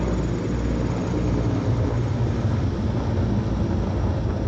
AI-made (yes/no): no